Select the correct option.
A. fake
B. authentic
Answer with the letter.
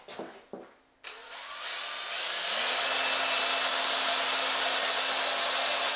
B